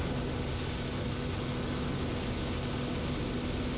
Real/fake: real